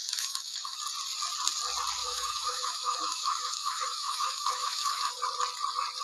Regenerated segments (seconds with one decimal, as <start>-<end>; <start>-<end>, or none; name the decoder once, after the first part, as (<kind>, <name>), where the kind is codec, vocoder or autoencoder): 0.0-0.8 (autoencoder, DAC-VAE); 2.0-5.1